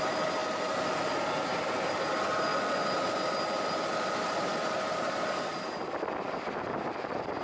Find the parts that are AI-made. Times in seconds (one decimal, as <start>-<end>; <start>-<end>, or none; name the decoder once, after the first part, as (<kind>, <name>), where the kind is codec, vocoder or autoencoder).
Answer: 0.0-0.4 (vocoder, BigVGAN v2); 1.5-2.5; 3.7-7.4